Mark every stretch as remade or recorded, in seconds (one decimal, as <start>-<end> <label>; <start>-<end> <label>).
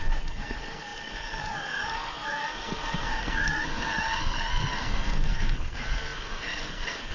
0.0-7.1 remade